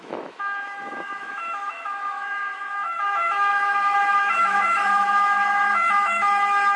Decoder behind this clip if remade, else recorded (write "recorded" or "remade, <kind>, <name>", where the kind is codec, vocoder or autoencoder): remade, autoencoder, DAC-VAE